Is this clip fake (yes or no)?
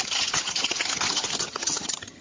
yes